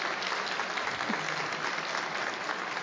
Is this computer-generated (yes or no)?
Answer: no